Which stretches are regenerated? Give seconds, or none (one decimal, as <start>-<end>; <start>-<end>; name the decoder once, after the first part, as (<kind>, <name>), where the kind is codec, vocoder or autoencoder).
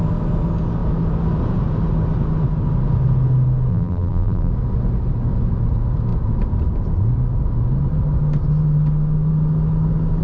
3.7-4.5 (vocoder, BigVGAN v2)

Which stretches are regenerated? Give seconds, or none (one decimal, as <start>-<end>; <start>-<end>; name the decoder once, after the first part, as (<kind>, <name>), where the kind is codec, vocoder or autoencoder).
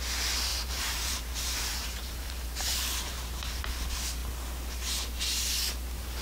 0.5-3.6 (vocoder, BigVGAN v2)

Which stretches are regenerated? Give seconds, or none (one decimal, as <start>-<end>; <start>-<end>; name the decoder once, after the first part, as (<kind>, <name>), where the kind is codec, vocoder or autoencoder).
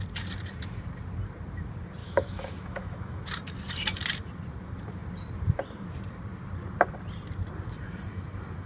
2.0-3.2 (autoencoder, DAC-VAE)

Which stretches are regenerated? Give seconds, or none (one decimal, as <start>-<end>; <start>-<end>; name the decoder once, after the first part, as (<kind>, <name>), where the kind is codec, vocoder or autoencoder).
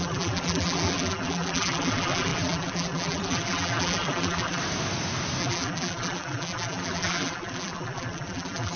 0.0-4.6 (vocoder, BigVGAN v2); 5.4-8.8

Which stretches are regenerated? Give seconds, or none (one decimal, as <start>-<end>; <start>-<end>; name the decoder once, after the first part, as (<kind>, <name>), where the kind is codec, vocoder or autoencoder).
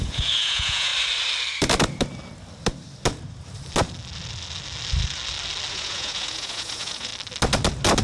0.0-0.9 (vocoder, Vocos); 5.7-7.1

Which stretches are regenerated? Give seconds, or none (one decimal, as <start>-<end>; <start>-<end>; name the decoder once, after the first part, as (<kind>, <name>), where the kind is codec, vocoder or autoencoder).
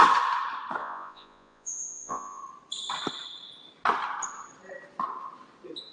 0.8-2.4 (vocoder, Vocos)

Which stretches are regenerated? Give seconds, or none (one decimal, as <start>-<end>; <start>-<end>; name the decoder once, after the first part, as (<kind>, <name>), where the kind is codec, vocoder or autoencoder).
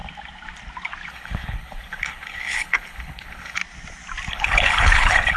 1.1-3.6 (codec, HILCodec); 4.3-5.4